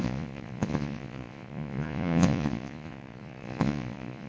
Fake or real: fake